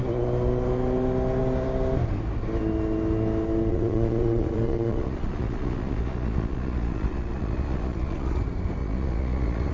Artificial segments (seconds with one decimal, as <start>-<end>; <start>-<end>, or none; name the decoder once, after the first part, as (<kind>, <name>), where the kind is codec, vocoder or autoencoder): 3.7-8.4 (vocoder, Vocos); 8.8-9.7